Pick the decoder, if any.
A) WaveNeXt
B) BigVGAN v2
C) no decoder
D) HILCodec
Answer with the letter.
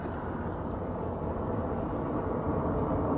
C